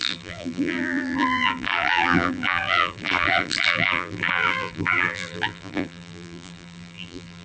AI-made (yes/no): yes